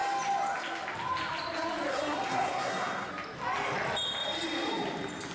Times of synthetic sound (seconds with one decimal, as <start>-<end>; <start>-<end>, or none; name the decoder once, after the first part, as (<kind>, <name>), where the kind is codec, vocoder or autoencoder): 1.9-3.1 (codec, SNAC)